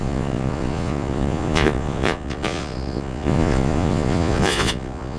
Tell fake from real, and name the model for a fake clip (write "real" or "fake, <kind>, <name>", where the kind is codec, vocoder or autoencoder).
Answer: fake, vocoder, Vocos